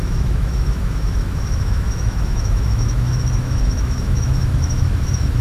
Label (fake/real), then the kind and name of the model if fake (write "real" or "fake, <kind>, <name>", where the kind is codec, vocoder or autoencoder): fake, autoencoder, DAC-VAE